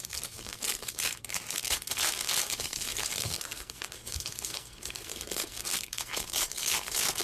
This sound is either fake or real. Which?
fake